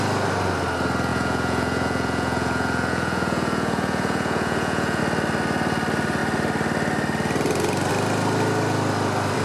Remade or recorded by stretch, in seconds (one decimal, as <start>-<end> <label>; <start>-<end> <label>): 0.0-1.1 recorded; 1.1-5.0 remade; 5.0-9.4 recorded